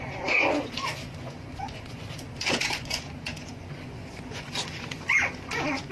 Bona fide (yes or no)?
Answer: no